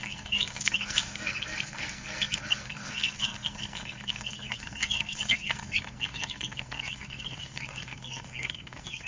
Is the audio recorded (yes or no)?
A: no